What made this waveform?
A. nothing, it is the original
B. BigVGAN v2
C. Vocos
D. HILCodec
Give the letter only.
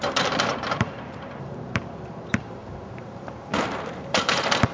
B